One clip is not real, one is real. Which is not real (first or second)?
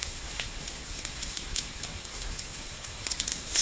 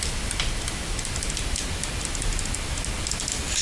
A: first